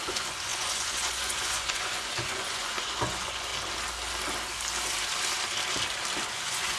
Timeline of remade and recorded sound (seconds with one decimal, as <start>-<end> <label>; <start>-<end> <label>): 0.0-3.5 remade; 3.5-6.3 recorded; 6.3-6.8 remade